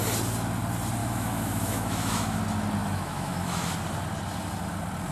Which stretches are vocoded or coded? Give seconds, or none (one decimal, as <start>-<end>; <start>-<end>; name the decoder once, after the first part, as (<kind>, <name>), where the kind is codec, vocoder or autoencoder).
1.0-2.4 (autoencoder, DAC-VAE); 2.8-3.7